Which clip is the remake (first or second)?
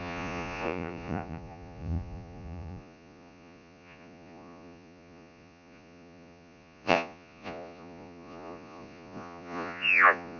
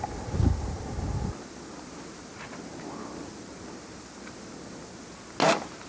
first